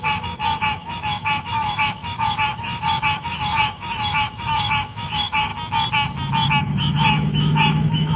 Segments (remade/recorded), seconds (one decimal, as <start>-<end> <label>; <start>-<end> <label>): 0.0-5.5 remade; 5.5-6.6 recorded; 6.6-8.2 remade